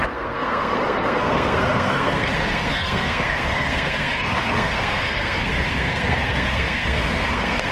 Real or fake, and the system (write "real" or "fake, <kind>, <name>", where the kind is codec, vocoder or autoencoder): fake, codec, SNAC